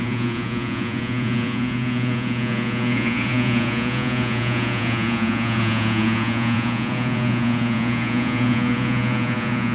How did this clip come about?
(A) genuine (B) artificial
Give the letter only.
B